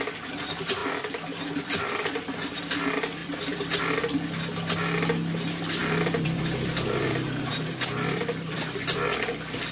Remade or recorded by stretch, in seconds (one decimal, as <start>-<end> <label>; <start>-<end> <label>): 0.0-3.2 recorded; 3.2-3.8 remade; 3.8-5.8 recorded; 5.8-9.7 remade